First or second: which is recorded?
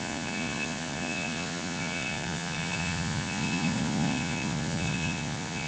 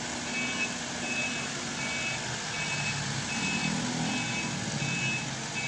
second